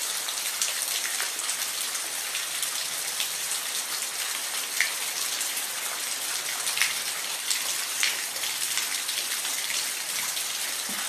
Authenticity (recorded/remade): remade